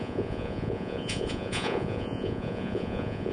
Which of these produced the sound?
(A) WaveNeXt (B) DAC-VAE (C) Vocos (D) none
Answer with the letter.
C